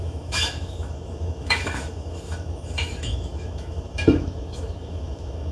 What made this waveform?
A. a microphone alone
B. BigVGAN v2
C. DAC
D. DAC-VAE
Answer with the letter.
D